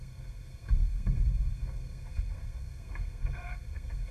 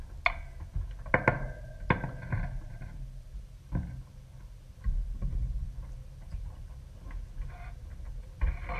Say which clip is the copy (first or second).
first